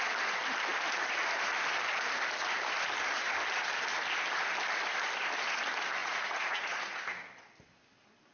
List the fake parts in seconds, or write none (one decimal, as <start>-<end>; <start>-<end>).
6.0-7.0